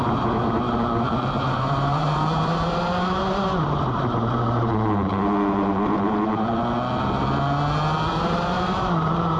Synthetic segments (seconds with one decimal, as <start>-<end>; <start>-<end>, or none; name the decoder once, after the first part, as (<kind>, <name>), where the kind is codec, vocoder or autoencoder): 0.0-6.6 (vocoder, BigVGAN v2); 8.1-9.4